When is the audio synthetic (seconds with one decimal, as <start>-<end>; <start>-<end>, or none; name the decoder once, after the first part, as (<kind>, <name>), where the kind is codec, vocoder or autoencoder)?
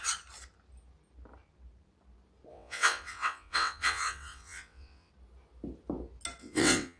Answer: 2.5-5.1 (vocoder, WaveNeXt); 6.4-7.0